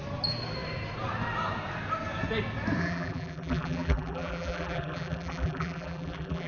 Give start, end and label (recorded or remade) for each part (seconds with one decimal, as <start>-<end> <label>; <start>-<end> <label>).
0.0-2.8 recorded; 2.8-6.5 remade